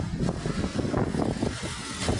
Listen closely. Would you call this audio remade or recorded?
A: recorded